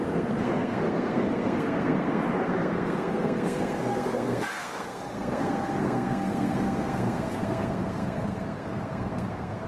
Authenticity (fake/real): fake